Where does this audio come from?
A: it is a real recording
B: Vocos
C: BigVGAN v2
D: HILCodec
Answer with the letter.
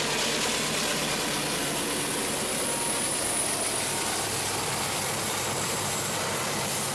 A